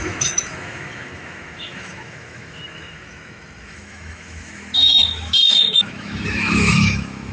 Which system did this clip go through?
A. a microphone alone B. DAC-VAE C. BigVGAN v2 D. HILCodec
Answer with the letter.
B